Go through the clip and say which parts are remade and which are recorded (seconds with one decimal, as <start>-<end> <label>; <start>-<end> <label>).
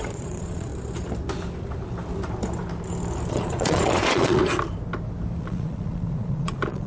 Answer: 0.0-0.7 remade; 0.7-3.3 recorded; 3.3-4.4 remade; 4.4-5.4 recorded; 5.4-6.9 remade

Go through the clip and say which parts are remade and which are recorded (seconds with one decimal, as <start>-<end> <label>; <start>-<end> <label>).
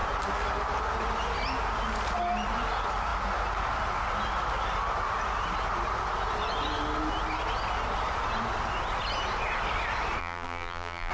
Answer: 0.0-10.2 recorded; 10.2-11.1 remade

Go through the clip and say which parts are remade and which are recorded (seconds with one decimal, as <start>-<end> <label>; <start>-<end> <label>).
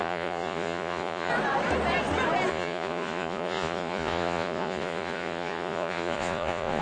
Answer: 0.0-1.3 remade; 1.3-2.5 recorded; 2.5-6.8 remade